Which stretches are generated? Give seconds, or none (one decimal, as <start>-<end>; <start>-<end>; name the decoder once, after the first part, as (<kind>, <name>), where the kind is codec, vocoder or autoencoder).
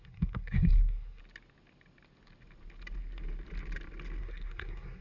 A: 0.0-1.2 (codec, SNAC); 4.2-5.0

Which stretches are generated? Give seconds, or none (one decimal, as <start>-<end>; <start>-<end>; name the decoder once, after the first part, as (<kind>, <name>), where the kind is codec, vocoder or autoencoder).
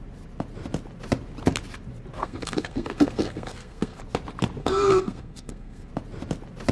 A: 2.2-4.0 (codec, SNAC); 4.6-5.9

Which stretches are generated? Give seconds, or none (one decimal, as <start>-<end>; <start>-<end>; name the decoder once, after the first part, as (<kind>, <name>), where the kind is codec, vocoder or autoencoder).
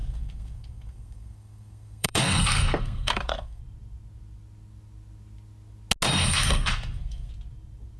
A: 0.0-3.6 (codec, SNAC); 6.2-7.3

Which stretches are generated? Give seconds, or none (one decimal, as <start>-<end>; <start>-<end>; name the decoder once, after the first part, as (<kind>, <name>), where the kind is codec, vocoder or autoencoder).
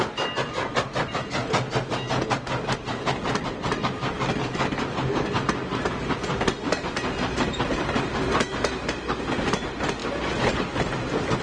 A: none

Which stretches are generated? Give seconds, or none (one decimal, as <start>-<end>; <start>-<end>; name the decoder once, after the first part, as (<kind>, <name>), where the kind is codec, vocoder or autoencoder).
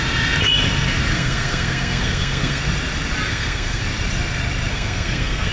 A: 1.1-2.6 (codec, SNAC); 3.3-3.8; 4.7-5.5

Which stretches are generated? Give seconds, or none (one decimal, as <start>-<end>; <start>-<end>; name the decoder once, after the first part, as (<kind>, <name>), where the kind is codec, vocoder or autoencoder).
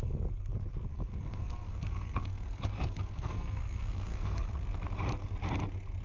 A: 0.9-4.5 (codec, SNAC)